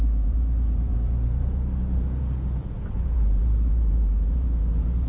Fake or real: fake